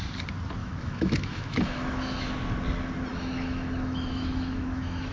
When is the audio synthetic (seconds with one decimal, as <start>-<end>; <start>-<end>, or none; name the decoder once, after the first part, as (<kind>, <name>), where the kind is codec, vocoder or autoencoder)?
0.6-2.3 (autoencoder, DAC-VAE); 3.1-5.1